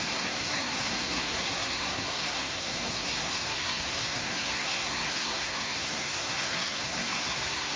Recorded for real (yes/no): no